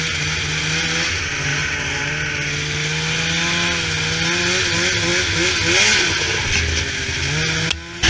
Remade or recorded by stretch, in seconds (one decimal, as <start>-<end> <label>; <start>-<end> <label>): 0.0-1.5 recorded; 1.5-2.1 remade; 2.1-8.1 recorded